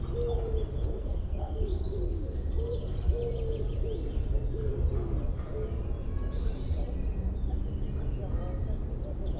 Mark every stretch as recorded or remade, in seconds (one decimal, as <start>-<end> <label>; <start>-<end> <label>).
0.0-0.7 recorded; 0.7-2.0 remade; 2.0-9.4 recorded